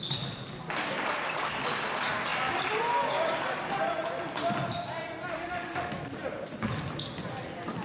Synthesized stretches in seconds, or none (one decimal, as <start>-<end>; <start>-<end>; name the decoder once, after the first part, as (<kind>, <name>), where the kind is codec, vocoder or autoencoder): 5.3-5.9 (autoencoder, DAC-VAE)